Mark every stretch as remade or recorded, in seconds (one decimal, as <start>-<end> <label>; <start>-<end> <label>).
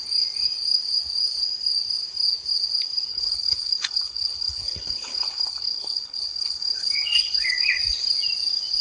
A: 0.0-3.1 recorded; 3.1-7.8 remade; 7.8-8.8 recorded